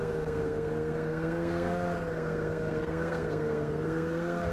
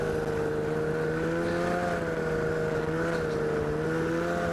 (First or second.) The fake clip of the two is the first